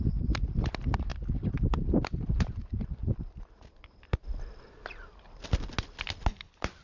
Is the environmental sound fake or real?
real